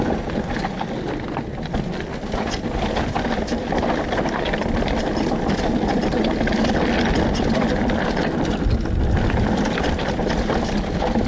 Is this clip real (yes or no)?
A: yes